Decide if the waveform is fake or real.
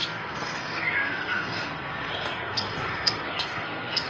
fake